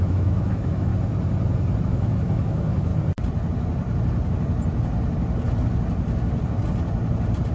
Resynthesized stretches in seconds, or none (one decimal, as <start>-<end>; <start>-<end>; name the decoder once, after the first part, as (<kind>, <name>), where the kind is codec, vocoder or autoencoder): 0.0-0.9 (autoencoder, DAC-VAE); 1.8-2.9